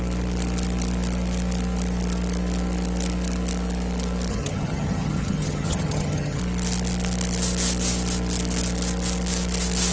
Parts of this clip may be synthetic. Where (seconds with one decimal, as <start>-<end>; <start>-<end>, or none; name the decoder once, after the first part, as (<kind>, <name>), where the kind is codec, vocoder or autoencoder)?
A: 4.3-6.4 (vocoder, HiFi-GAN)